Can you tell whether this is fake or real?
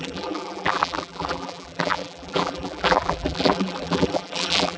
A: fake